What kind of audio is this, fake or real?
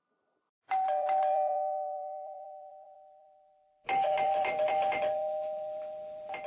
fake